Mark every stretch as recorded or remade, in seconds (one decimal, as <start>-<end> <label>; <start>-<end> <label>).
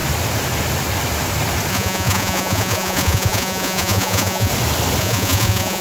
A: 0.0-1.7 recorded; 1.7-4.5 remade; 4.5-5.0 recorded; 5.0-5.8 remade